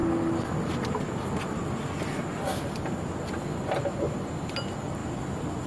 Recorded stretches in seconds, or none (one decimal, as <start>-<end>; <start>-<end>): 0.0-5.7